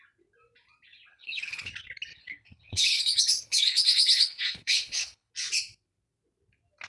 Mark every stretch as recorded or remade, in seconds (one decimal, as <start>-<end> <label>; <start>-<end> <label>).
0.0-1.1 recorded; 1.1-1.7 remade; 1.7-2.1 recorded; 2.1-5.3 remade; 5.3-6.9 recorded